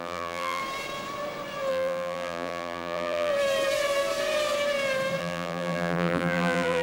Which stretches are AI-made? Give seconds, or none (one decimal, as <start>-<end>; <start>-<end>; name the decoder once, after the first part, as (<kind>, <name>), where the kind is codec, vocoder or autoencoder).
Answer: 0.0-0.6 (vocoder, BigVGAN v2); 1.7-3.3; 5.2-6.8